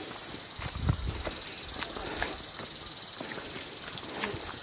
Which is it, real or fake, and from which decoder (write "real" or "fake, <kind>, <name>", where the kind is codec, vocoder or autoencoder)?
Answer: real